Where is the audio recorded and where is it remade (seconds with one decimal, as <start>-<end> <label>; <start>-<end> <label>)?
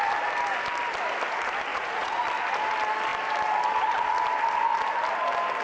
0.0-1.7 recorded; 1.7-2.2 remade; 2.2-5.6 recorded